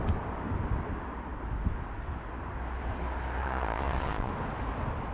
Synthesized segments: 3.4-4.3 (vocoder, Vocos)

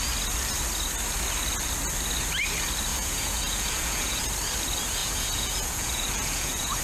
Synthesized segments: 2.9-4.2 (vocoder, Vocos); 5.0-6.8

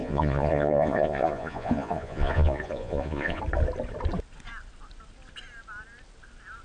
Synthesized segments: 0.0-3.4 (vocoder, Vocos)

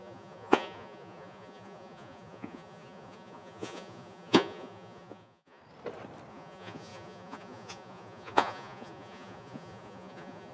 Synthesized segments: 0.0-5.6 (vocoder, Vocos); 6.3-10.5